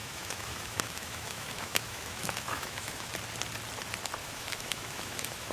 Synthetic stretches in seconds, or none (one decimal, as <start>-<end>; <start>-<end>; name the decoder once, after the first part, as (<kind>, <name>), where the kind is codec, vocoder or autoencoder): 0.0-3.1 (autoencoder, DAC-VAE); 4.2-5.5